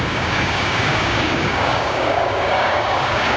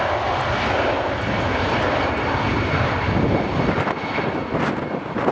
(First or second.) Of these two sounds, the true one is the second